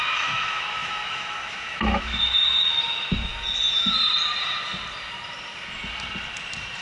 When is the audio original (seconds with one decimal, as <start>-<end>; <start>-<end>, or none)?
3.3-6.8